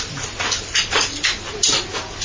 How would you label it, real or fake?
fake